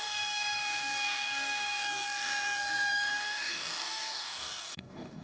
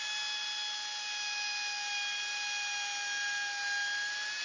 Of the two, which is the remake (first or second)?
first